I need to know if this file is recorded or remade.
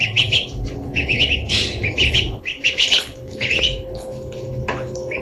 remade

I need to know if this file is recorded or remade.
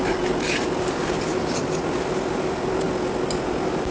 recorded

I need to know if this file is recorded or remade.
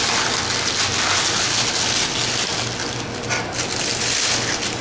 recorded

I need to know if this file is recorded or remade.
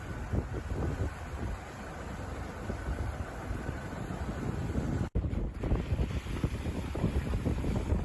recorded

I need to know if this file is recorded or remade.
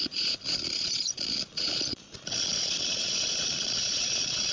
remade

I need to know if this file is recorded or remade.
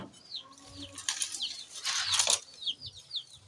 recorded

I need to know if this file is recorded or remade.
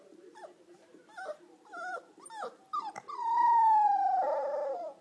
remade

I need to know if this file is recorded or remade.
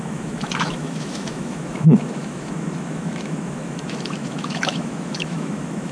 remade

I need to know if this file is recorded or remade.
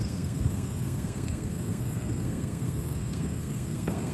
remade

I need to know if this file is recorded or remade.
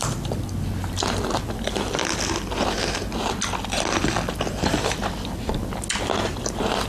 recorded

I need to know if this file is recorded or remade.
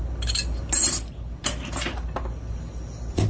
recorded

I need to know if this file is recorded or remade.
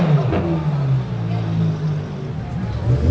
recorded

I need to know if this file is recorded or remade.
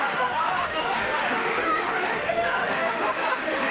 remade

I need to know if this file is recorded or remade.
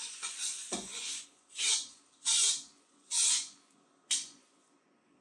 remade